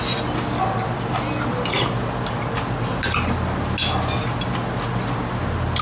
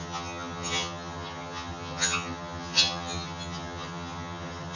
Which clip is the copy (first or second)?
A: second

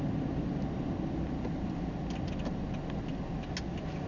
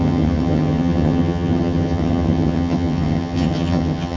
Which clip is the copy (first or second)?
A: second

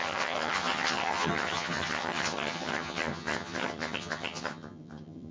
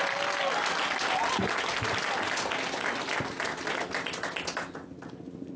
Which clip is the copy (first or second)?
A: first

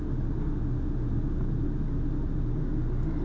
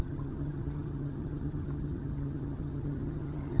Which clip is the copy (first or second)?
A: second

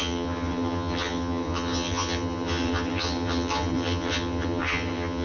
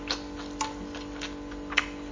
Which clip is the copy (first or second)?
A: first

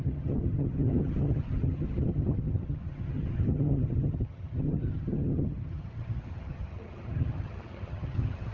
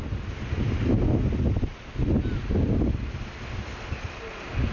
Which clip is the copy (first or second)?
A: first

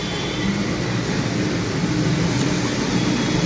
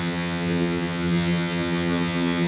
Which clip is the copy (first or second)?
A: second